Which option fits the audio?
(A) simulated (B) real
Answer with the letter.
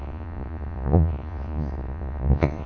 A